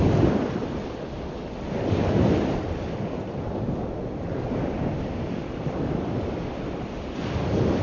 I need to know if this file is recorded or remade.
recorded